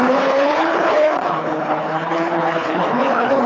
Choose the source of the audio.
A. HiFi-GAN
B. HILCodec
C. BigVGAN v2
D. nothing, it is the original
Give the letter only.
B